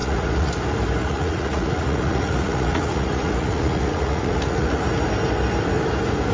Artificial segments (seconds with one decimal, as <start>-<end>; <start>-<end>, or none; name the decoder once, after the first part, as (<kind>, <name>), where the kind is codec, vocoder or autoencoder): 0.0-0.5 (vocoder, Vocos); 1.0-4.8